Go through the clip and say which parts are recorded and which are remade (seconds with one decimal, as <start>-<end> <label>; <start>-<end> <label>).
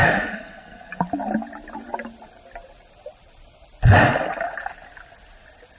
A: 0.0-0.9 remade; 0.9-5.8 recorded